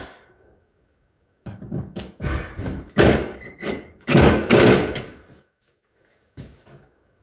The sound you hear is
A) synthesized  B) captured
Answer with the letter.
A